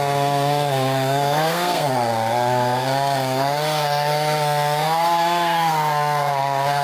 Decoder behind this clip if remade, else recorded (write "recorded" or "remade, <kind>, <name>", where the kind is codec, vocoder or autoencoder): remade, codec, SNAC